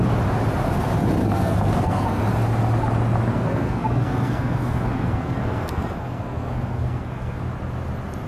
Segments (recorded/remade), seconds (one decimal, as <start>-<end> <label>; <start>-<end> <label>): 0.0-1.2 recorded; 1.2-2.2 remade; 2.2-3.3 recorded; 3.3-7.4 remade; 7.4-8.3 recorded